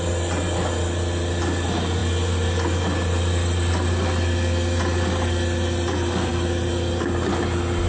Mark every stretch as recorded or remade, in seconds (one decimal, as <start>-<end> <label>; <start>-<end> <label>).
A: 0.0-7.9 recorded